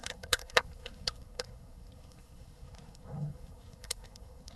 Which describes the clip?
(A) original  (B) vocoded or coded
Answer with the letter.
B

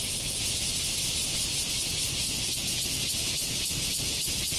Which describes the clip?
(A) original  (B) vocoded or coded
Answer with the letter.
A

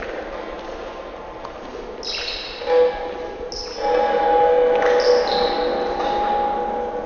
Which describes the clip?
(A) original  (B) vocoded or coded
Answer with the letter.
A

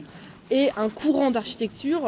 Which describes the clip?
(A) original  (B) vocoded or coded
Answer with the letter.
A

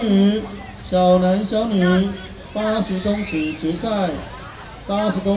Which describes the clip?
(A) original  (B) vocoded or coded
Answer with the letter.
A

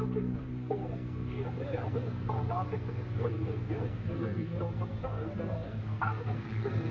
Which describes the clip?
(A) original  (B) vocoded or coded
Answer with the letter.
B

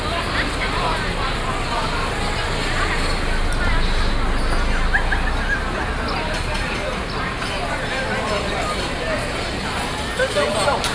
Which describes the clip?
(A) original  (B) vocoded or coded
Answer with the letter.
A